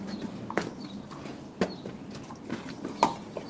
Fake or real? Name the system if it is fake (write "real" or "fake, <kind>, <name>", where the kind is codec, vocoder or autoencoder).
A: real